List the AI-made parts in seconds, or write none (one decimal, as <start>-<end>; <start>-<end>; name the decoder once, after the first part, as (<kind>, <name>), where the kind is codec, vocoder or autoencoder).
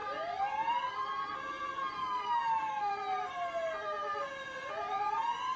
2.0-2.9 (codec, DAC)